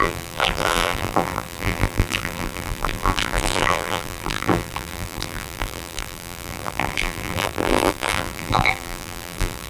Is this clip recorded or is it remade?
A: remade